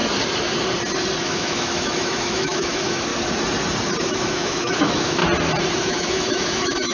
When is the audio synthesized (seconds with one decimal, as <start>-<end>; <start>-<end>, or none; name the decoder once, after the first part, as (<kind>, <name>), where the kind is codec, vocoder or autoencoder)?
1.2-3.1 (autoencoder, DAC-VAE); 4.1-5.2; 5.8-6.9